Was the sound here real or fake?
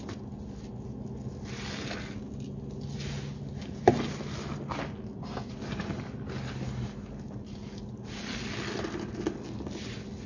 real